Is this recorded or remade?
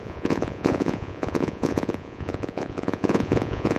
remade